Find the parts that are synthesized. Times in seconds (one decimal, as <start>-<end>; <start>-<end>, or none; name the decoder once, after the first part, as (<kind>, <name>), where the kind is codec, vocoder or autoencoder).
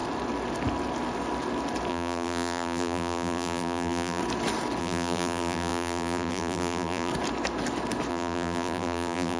1.9-4.2 (vocoder, BigVGAN v2); 4.8-7.1; 8.1-9.4